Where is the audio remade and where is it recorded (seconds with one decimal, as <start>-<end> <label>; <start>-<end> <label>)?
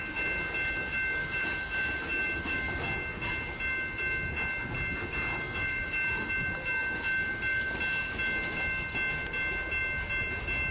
0.0-1.2 recorded; 1.2-2.8 remade; 2.8-5.3 recorded; 5.3-6.3 remade; 6.3-10.7 recorded